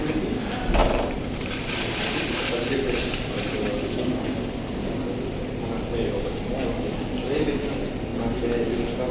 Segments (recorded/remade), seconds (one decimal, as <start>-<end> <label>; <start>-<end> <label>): 0.0-0.8 recorded; 0.8-2.1 remade; 2.1-9.1 recorded